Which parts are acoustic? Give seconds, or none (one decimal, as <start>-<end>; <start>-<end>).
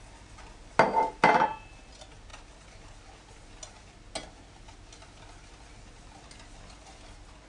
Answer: 0.0-7.5